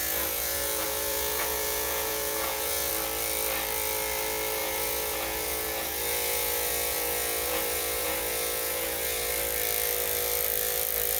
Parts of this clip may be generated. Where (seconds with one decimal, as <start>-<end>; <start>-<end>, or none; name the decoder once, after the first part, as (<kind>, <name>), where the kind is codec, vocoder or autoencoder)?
0.0-2.9 (vocoder, Vocos); 4.6-9.3